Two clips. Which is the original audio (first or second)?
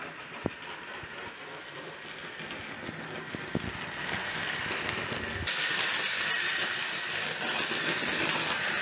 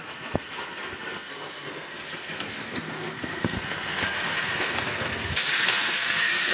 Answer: first